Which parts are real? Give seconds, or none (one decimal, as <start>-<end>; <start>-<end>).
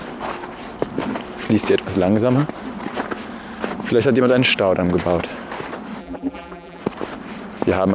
0.0-6.0; 6.8-7.9